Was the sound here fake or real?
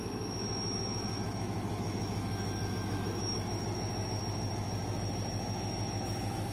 fake